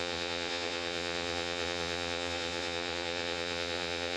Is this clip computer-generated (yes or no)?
yes